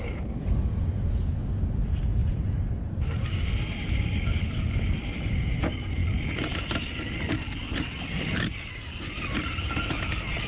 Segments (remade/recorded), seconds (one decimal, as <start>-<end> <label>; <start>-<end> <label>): 0.0-2.2 recorded; 2.2-4.8 remade; 4.8-10.5 recorded